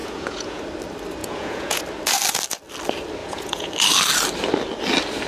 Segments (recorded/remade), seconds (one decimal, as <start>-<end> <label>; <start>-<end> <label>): 0.0-0.6 remade; 0.6-1.2 recorded; 1.2-1.8 remade; 1.8-3.2 recorded; 3.2-3.7 remade; 3.7-5.3 recorded